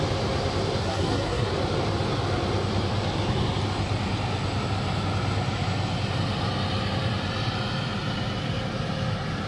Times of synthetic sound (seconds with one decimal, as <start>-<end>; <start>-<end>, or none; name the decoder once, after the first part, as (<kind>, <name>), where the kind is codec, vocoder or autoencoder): 0.8-1.5 (codec, SNAC)